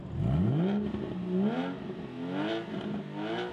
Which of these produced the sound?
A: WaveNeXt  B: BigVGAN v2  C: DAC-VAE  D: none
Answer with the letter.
D